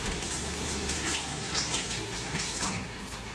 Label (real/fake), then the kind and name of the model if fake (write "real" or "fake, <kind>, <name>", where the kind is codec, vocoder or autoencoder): fake, codec, SNAC